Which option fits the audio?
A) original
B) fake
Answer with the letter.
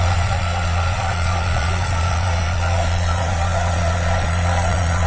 B